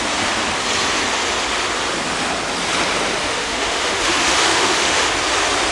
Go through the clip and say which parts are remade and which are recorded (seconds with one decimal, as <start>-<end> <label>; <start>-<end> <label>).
0.0-3.2 recorded; 3.2-5.0 remade; 5.0-5.7 recorded